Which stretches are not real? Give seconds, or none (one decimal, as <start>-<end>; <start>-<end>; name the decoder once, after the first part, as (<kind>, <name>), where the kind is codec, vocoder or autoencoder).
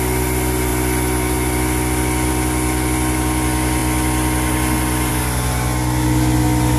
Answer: none